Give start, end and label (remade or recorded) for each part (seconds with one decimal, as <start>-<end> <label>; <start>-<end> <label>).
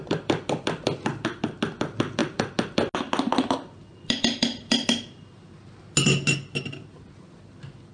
0.0-7.9 recorded